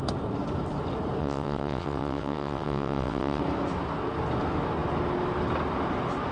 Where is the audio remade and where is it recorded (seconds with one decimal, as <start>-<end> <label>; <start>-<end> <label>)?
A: 0.0-1.2 recorded; 1.2-3.4 remade; 3.4-6.3 recorded